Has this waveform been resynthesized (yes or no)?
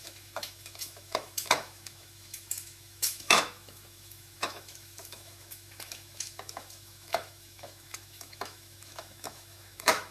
yes